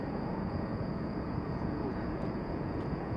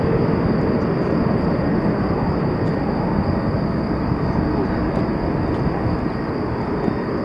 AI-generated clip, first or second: first